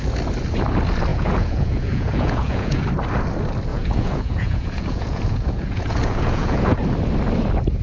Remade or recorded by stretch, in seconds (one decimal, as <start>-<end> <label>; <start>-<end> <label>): 0.0-1.1 recorded; 1.1-2.8 remade; 2.8-3.7 recorded; 3.7-6.8 remade; 6.8-7.8 recorded